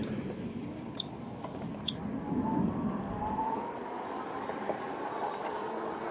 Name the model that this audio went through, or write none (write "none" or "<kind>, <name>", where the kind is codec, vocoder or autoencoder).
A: none